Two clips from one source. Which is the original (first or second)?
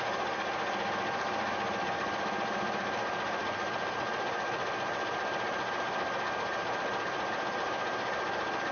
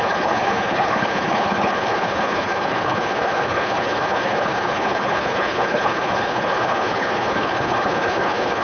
first